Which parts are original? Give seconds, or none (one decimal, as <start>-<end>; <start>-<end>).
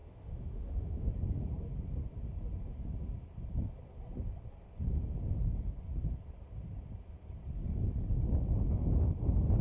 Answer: 1.1-9.6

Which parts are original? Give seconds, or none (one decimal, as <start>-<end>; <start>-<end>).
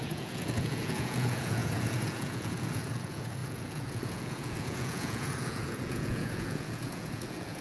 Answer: none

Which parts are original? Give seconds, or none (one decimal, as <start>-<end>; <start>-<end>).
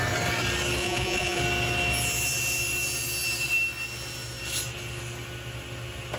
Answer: 0.0-0.8; 1.4-6.2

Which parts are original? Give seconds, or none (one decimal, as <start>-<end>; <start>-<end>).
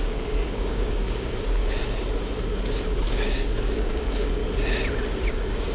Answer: 1.6-2.8; 4.4-5.3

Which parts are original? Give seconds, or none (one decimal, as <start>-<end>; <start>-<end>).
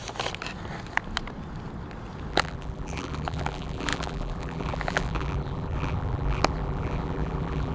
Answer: 0.0-2.3